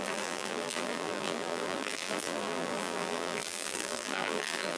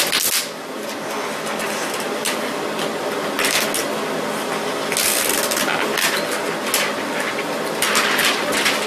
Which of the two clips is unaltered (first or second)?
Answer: second